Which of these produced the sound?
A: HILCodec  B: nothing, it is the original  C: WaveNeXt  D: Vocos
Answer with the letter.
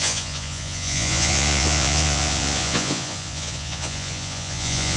D